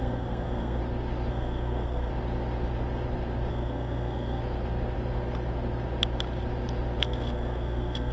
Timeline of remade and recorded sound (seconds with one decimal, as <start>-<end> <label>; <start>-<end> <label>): 0.0-0.8 remade; 0.8-1.3 recorded; 1.3-2.1 remade; 2.1-3.5 recorded; 3.5-4.4 remade; 4.4-7.0 recorded; 7.0-8.1 remade